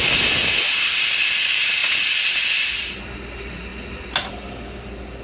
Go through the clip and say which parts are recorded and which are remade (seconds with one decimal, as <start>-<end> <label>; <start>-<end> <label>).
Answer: 0.0-5.2 recorded